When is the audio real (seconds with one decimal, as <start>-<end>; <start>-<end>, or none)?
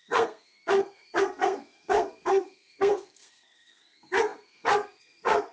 none